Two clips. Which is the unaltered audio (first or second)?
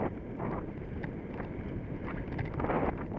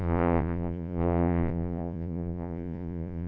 first